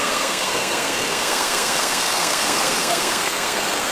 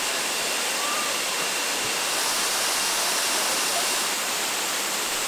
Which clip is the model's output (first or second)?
first